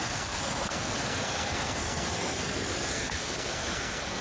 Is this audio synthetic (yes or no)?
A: yes